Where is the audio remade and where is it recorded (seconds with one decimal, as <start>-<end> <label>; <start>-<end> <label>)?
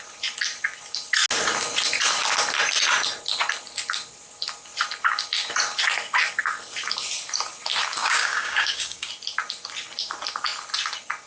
0.0-8.0 recorded; 8.0-9.1 remade; 9.1-11.3 recorded